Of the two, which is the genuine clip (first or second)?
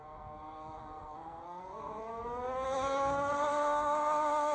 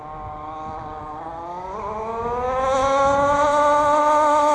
second